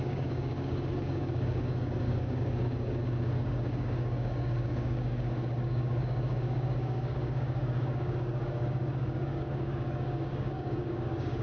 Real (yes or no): no